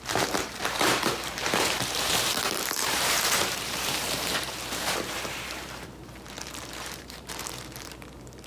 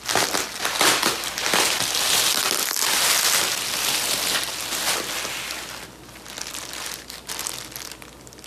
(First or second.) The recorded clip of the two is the second